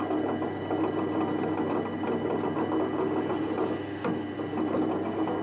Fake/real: real